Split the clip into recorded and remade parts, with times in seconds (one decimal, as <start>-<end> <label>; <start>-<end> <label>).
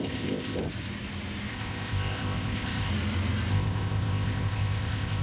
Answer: 0.0-0.6 remade; 0.6-1.5 recorded; 1.5-2.9 remade; 2.9-3.5 recorded; 3.5-5.2 remade